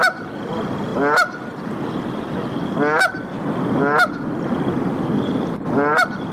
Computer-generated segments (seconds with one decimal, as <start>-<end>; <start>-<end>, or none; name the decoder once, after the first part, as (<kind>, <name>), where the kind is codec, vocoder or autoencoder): none